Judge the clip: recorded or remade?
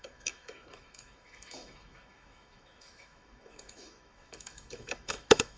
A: remade